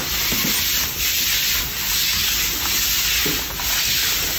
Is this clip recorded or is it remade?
recorded